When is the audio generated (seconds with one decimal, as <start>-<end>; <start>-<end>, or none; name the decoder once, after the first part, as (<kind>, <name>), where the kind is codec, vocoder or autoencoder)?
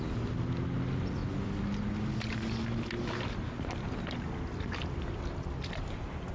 none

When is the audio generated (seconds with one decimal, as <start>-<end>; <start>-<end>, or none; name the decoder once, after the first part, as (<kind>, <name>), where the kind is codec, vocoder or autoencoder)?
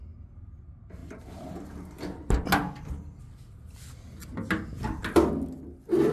none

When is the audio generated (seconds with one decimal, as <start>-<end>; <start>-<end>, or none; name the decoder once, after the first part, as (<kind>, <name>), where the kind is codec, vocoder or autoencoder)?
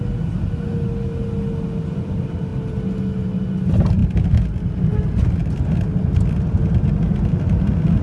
none